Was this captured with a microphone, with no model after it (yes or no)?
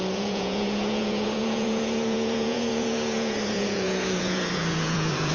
no